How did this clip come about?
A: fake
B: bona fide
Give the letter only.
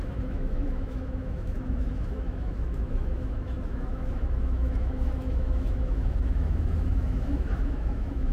A